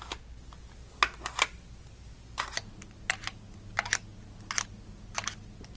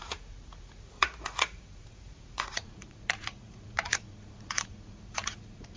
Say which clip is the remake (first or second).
second